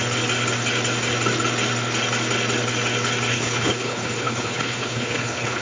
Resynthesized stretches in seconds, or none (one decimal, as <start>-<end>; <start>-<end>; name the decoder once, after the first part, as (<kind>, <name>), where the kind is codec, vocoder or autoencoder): 3.3-5.6 (codec, HILCodec)